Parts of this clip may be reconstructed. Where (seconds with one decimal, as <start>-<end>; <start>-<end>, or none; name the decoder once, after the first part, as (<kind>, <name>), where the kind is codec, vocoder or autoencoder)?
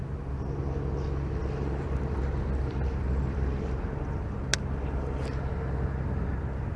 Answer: none